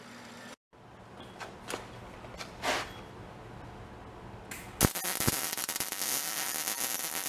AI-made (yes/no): no